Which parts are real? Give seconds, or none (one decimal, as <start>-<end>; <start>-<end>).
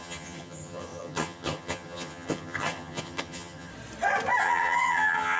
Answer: 3.7-4.4